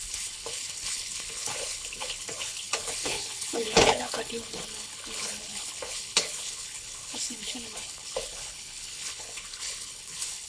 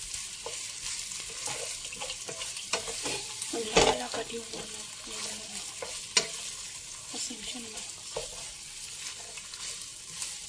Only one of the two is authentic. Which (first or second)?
second